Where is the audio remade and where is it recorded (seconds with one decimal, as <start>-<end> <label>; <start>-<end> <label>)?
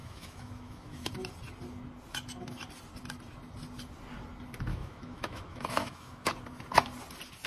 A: 0.0-1.1 remade; 1.1-4.7 recorded; 4.7-6.3 remade; 6.3-7.5 recorded